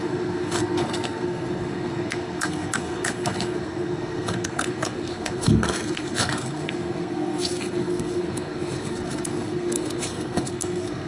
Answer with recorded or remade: remade